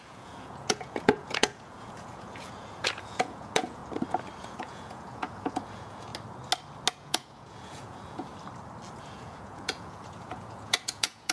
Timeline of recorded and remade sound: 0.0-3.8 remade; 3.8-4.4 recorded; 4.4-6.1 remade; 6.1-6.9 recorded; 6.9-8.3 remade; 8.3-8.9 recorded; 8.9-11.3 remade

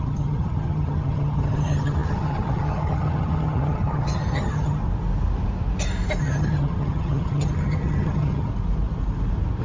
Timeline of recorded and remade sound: 0.0-4.8 remade; 4.8-6.2 recorded; 6.2-8.5 remade; 8.5-9.6 recorded

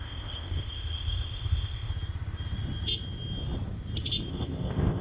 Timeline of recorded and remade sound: 0.0-1.9 remade; 1.9-4.3 recorded; 4.3-5.0 remade